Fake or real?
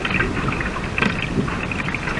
real